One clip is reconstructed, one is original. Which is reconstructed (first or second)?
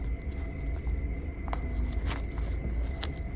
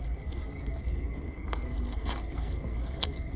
second